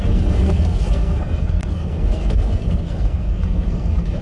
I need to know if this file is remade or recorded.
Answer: remade